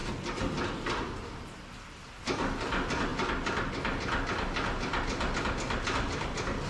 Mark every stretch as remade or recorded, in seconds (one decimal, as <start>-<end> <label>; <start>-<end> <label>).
0.0-1.2 remade; 1.2-6.7 recorded